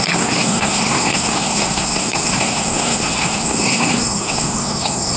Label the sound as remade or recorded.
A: remade